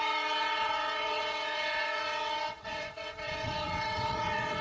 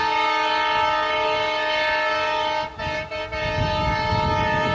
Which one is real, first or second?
second